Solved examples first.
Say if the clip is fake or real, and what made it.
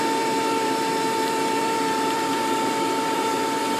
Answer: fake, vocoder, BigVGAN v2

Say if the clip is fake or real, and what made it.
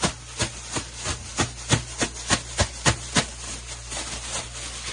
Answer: real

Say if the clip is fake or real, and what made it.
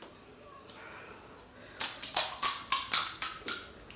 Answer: real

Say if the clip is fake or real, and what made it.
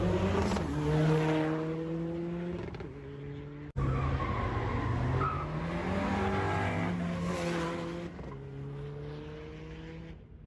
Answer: real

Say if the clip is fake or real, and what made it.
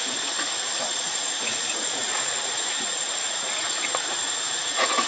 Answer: fake, vocoder, Vocos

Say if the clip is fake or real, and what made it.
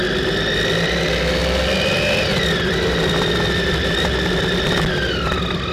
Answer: real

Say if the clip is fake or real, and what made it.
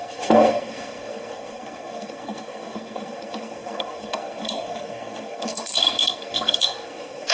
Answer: fake, codec, SNAC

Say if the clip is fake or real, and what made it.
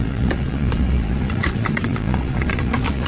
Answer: fake, vocoder, Vocos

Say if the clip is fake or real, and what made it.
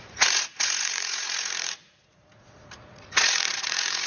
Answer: fake, vocoder, Vocos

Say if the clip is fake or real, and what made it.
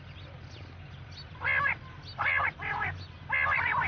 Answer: real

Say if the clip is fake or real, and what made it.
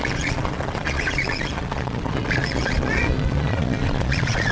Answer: fake, vocoder, Vocos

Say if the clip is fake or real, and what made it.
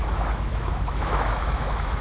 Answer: fake, autoencoder, DAC-VAE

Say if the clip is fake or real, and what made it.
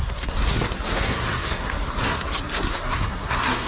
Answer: fake, codec, SNAC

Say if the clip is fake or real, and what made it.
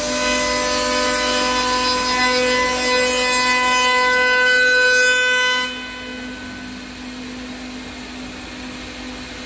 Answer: real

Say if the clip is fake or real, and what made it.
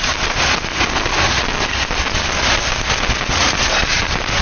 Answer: real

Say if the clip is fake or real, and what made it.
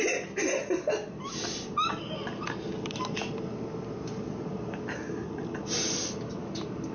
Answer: real